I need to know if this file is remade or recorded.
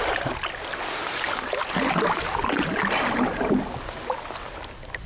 recorded